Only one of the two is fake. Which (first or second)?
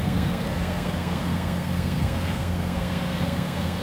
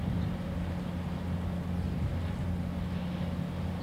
first